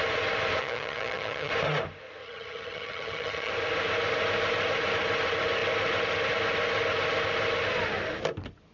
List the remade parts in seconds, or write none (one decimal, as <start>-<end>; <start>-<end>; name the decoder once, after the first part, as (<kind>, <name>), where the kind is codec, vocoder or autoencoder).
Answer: 0.6-1.5 (vocoder, HiFi-GAN); 2.2-3.5